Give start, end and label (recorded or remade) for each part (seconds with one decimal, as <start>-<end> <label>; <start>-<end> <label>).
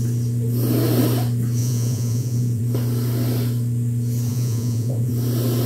0.0-1.6 recorded; 1.6-2.6 remade; 2.6-4.3 recorded; 4.3-5.1 remade; 5.1-5.7 recorded